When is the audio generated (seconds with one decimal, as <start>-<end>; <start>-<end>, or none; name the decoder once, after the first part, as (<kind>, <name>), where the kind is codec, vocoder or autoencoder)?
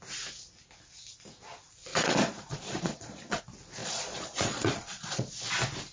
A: 1.9-3.4 (vocoder, Vocos); 3.8-5.3